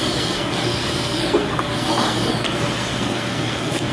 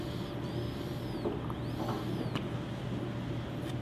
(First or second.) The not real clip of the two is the first